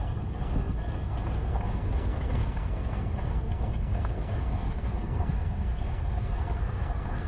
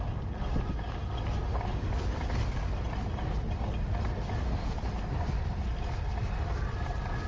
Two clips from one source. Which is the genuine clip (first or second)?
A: second